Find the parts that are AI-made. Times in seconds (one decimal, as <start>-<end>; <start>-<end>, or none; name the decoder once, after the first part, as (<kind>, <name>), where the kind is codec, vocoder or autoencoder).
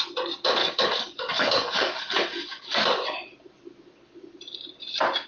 0.6-2.8 (codec, DAC)